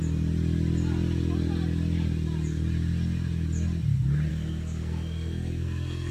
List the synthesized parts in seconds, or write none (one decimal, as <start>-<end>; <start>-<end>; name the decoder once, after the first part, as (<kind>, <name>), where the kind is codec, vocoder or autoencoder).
4.3-6.1 (codec, SNAC)